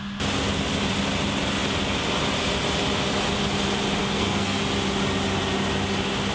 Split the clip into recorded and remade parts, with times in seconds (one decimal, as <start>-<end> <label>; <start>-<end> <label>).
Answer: 0.0-4.0 recorded; 4.0-4.6 remade; 4.6-6.3 recorded